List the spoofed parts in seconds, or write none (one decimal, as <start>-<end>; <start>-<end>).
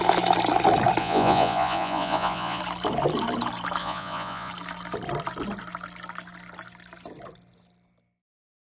1.0-2.6; 3.8-4.5